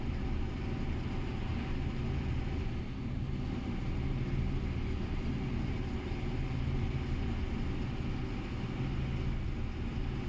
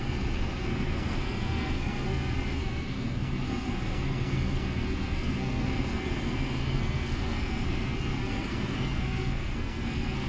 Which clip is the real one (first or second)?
first